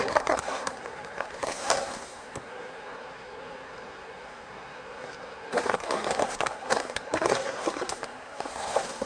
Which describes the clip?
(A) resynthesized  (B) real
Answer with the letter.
A